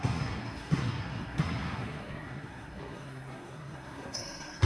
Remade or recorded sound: remade